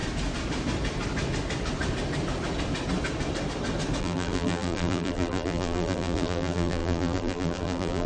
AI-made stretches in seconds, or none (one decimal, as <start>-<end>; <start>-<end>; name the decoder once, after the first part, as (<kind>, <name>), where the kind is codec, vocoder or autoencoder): 4.0-8.1 (vocoder, BigVGAN v2)